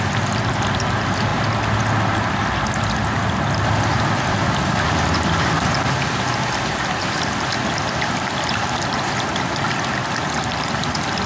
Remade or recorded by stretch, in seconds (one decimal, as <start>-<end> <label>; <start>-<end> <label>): 0.0-11.3 recorded